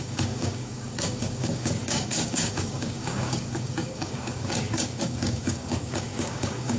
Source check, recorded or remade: remade